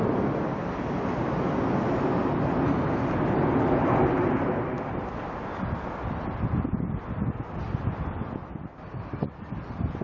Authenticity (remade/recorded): recorded